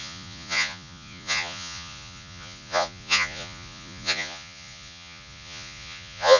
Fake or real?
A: fake